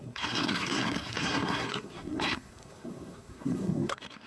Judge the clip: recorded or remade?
remade